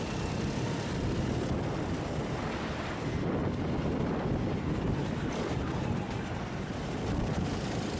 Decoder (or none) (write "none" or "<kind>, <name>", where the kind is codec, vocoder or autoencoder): none